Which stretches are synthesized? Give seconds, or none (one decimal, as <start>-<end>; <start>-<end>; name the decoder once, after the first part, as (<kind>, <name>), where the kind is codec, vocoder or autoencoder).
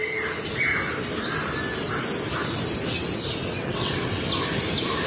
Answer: 3.4-4.2 (vocoder, WaveNeXt)